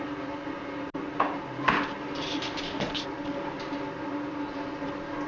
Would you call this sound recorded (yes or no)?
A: yes